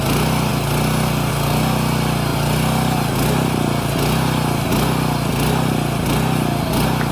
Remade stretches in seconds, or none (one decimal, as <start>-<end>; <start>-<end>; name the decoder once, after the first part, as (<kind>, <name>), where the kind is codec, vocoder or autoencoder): none